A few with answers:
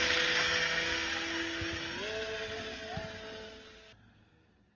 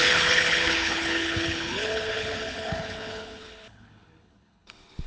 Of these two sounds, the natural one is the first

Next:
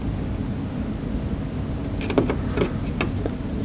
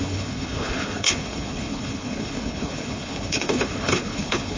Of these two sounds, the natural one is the first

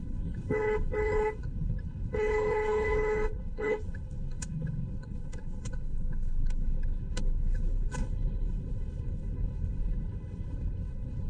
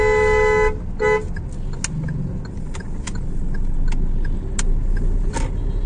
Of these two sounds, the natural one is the second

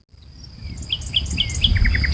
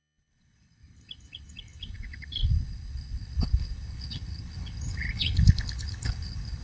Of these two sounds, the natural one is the first